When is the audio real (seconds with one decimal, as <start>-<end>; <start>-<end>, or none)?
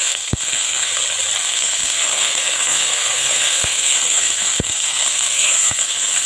0.9-1.4